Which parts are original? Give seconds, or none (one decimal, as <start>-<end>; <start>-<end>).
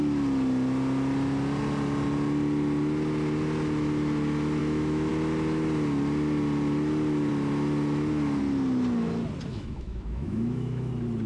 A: 0.0-4.6; 5.1-9.5; 10.9-11.3